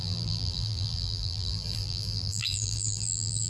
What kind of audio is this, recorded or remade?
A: remade